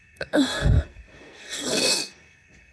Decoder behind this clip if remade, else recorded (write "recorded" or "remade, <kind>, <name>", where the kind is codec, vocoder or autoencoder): remade, codec, SNAC